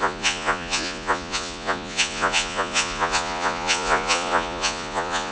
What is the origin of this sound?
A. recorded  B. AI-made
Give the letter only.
B